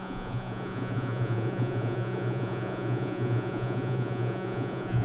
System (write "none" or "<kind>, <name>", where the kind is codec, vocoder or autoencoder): vocoder, Vocos